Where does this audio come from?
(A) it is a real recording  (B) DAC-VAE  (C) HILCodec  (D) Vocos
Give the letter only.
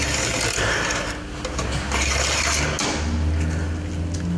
A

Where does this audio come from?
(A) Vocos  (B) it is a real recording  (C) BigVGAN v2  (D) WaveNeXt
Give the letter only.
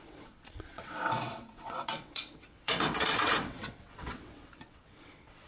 D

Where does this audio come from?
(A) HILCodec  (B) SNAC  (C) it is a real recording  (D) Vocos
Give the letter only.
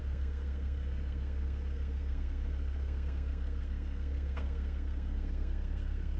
B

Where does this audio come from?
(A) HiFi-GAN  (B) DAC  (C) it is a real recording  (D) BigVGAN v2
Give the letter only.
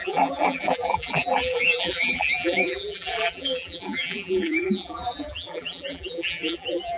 D